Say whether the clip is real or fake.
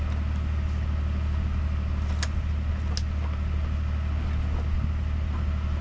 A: real